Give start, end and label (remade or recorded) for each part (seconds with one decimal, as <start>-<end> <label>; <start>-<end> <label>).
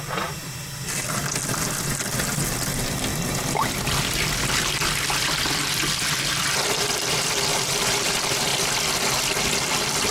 0.0-7.5 recorded; 7.5-8.1 remade; 8.1-10.1 recorded